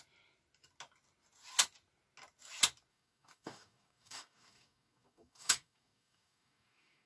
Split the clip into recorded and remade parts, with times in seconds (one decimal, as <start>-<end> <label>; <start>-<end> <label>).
0.0-2.9 recorded; 2.9-7.1 remade